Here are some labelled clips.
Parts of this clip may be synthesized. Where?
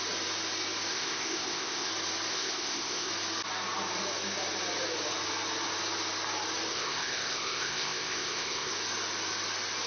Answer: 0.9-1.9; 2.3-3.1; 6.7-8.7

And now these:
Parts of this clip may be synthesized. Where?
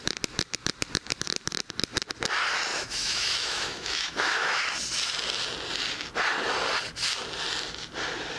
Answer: 2.7-4.6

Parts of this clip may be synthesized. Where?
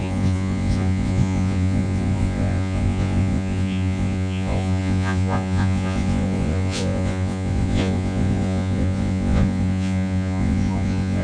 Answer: 0.0-11.2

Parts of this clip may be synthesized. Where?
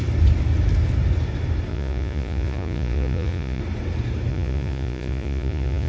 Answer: 1.7-3.6; 4.3-5.9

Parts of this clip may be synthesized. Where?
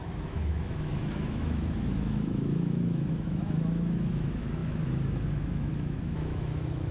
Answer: 0.0-6.9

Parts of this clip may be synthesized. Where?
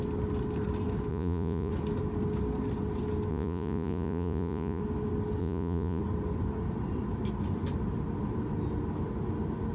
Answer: 1.1-1.7; 3.3-4.8; 5.4-6.0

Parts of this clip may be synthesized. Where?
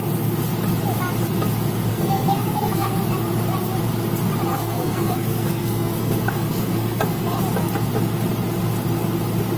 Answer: 1.9-3.0; 4.5-7.4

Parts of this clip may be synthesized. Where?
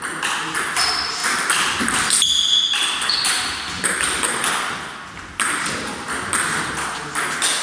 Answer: none